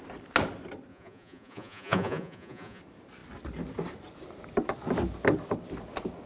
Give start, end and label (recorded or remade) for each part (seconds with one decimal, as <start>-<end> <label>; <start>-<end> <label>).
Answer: 0.0-0.9 recorded; 0.9-2.8 remade; 2.8-6.3 recorded